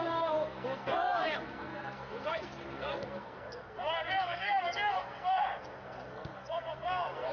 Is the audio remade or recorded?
remade